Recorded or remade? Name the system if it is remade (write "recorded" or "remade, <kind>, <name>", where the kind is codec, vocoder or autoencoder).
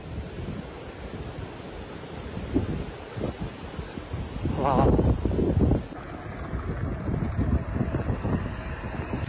recorded